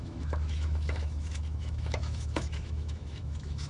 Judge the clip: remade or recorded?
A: remade